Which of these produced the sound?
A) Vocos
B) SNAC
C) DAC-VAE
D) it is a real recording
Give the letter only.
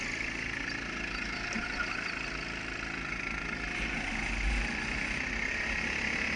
D